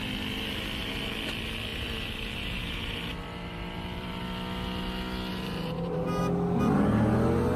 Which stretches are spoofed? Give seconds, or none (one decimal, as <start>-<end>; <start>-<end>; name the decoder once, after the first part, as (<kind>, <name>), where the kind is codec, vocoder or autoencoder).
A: 1.7-4.2 (vocoder, BigVGAN v2); 5.3-6.2